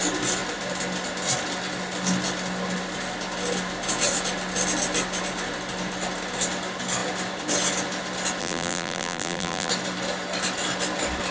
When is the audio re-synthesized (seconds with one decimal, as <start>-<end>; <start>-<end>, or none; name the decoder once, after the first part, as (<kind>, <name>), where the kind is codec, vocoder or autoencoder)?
8.4-9.7 (vocoder, BigVGAN v2)